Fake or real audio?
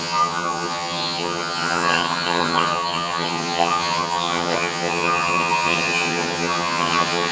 fake